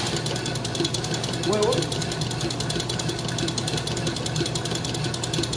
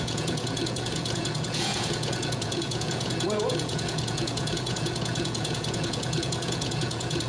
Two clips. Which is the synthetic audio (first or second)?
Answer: second